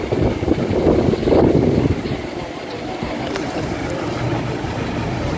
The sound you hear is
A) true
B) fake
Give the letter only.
A